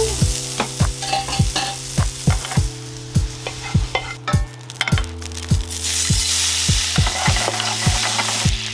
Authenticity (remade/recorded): recorded